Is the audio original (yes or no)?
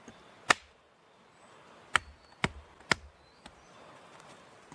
yes